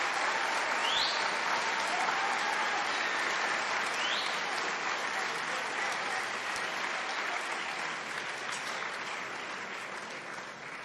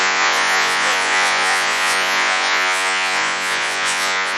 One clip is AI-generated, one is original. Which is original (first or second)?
first